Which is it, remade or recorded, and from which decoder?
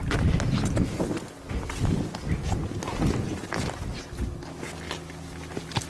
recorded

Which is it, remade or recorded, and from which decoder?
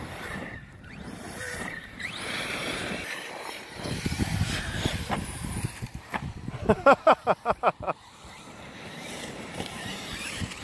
remade, vocoder, BigVGAN v2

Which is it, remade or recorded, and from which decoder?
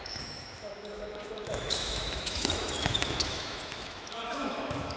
remade, autoencoder, DAC-VAE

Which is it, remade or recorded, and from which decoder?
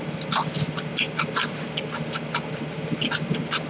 recorded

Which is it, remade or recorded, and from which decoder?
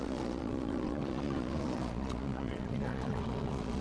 remade, vocoder, Vocos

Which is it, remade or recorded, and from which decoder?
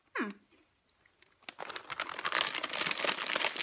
recorded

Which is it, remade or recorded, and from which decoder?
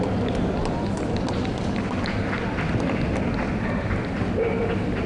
recorded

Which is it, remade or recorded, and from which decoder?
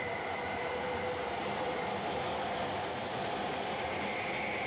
recorded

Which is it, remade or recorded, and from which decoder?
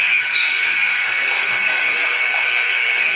remade, codec, SNAC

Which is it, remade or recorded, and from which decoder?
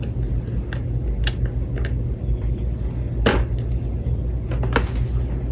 recorded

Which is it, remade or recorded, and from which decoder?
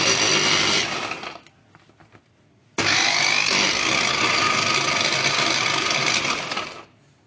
recorded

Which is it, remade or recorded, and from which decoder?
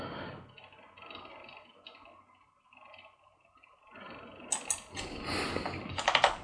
recorded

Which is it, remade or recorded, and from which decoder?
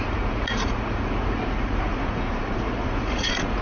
remade, vocoder, Vocos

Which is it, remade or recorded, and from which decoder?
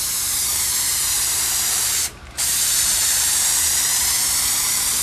remade, vocoder, BigVGAN v2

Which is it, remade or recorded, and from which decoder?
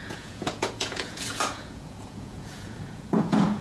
remade, vocoder, Vocos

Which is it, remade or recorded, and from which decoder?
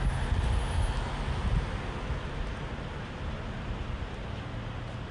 recorded